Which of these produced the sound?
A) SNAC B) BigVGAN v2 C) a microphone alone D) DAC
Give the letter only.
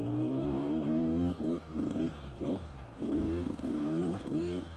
D